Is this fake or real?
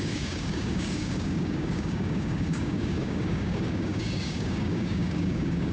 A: fake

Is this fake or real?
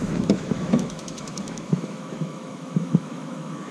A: fake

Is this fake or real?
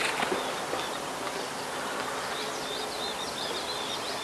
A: real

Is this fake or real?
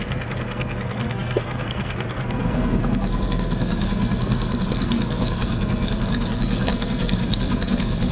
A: fake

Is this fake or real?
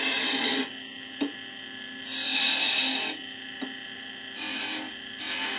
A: real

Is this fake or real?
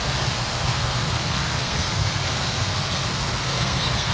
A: fake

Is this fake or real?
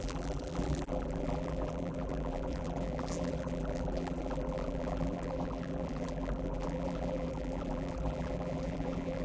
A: fake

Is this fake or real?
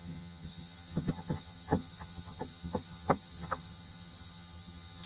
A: fake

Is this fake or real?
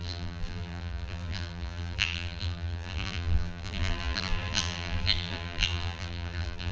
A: fake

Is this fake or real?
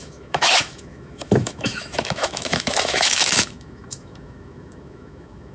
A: fake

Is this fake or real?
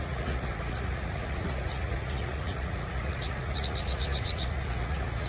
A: fake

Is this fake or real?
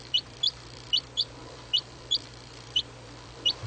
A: fake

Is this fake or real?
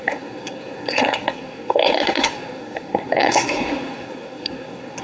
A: fake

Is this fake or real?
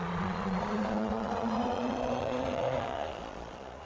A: fake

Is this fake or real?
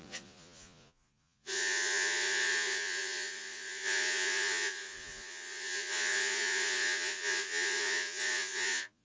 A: fake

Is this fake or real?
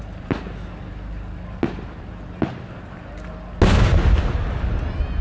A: real